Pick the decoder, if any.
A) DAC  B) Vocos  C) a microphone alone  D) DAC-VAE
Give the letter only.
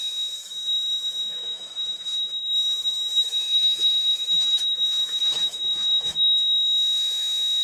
D